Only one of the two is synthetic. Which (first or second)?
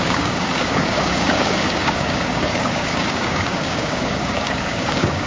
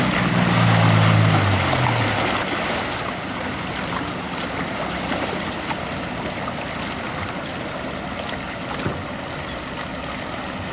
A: first